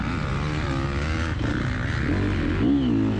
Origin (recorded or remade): recorded